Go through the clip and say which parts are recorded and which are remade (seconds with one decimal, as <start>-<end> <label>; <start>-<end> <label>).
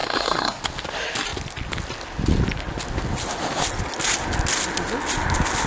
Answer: 0.0-0.6 remade; 0.6-5.7 recorded